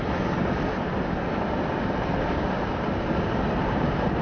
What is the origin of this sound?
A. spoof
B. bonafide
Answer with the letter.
B